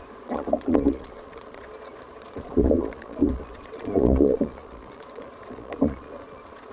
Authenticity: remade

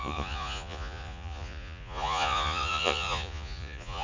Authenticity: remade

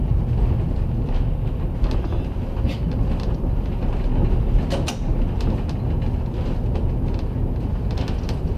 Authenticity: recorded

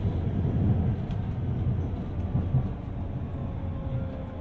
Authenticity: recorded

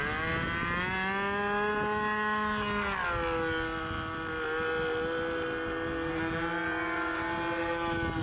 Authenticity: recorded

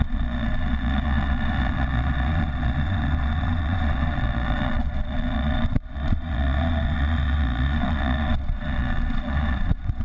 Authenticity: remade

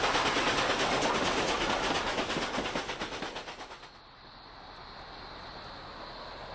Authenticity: recorded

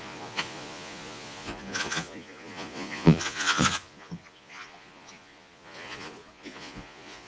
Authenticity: remade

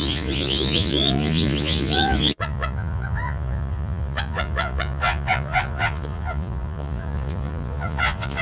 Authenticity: remade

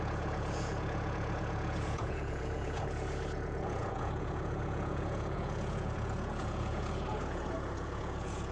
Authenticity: remade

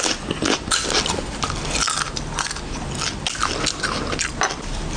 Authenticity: recorded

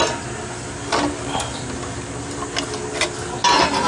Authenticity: recorded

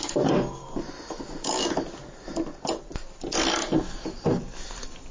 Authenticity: recorded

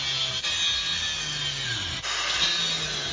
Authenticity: recorded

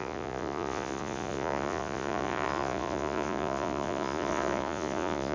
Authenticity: remade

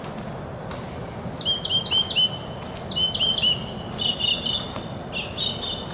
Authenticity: recorded